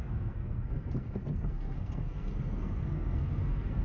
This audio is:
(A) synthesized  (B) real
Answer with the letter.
A